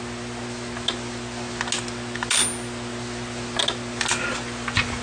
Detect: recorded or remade recorded